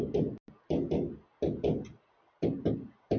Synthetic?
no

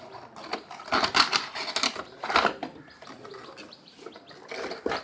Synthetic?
no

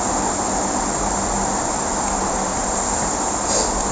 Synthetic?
no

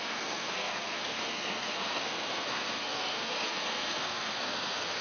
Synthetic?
yes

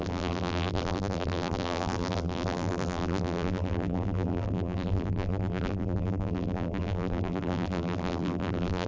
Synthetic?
yes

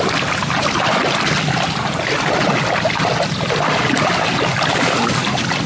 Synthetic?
no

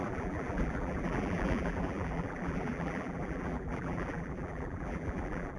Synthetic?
yes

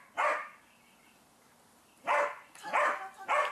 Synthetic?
no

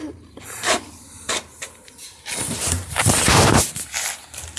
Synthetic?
yes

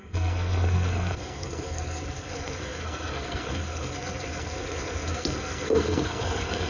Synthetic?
yes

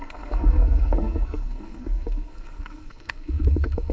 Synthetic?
yes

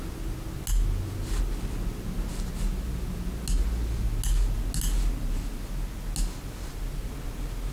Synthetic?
no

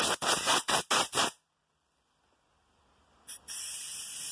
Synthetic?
no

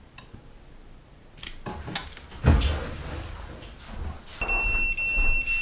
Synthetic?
no